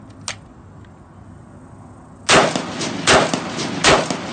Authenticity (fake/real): real